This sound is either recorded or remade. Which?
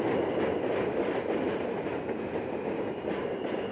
recorded